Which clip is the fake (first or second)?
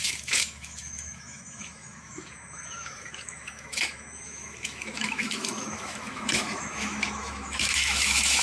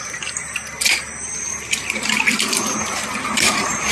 first